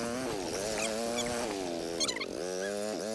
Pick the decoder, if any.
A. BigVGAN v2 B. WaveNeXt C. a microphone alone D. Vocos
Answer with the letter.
C